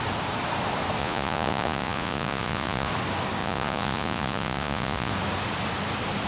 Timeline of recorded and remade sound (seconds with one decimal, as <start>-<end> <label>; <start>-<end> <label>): 0.0-1.0 recorded; 1.0-2.9 remade; 2.9-3.4 recorded; 3.4-5.1 remade; 5.1-6.3 recorded